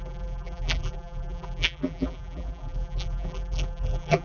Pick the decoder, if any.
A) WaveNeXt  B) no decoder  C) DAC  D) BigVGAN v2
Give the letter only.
D